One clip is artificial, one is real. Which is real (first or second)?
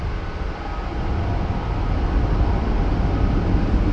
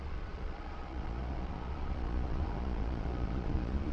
first